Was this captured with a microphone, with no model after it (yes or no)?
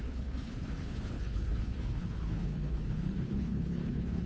no